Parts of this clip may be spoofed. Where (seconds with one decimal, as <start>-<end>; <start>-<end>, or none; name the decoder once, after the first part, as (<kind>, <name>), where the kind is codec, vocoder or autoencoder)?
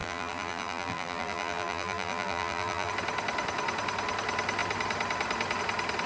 0.0-2.9 (vocoder, BigVGAN v2)